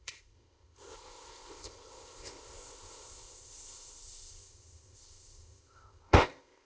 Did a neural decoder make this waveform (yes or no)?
yes